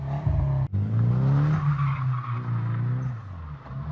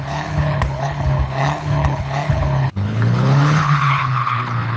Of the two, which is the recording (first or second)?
first